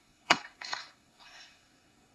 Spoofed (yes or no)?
yes